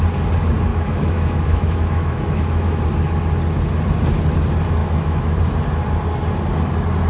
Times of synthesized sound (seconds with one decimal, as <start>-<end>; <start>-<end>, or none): 0.7-2.8; 4.8-5.4